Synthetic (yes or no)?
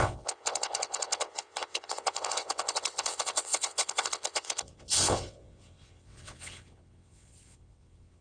yes